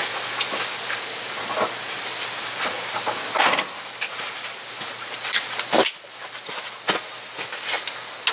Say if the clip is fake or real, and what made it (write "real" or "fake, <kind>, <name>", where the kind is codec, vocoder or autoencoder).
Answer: real